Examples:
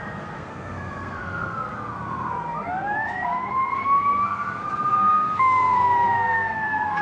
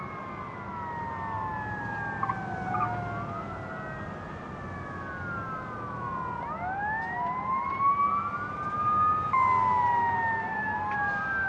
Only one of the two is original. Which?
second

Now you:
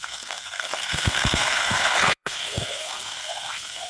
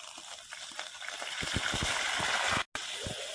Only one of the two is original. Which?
second